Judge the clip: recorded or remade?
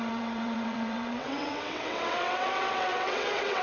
remade